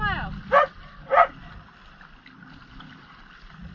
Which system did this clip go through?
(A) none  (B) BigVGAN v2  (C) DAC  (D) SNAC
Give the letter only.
A